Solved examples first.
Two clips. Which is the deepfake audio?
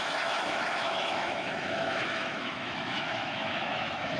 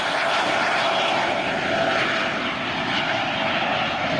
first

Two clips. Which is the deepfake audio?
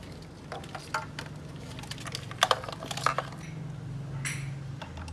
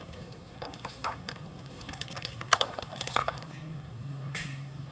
second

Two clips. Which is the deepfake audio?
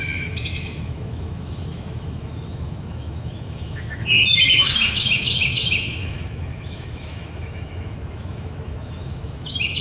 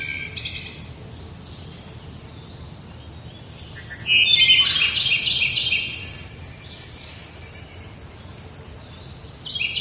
first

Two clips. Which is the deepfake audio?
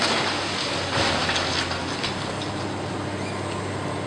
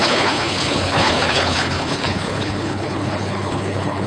second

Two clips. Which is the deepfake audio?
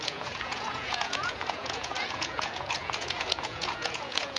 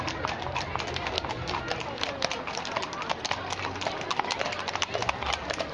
first